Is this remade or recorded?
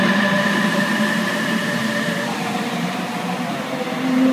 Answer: remade